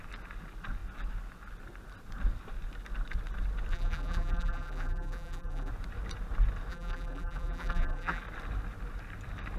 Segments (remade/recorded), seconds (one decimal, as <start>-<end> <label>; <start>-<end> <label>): 0.0-3.7 recorded; 3.7-5.7 remade; 5.7-6.7 recorded; 6.7-8.2 remade; 8.2-9.6 recorded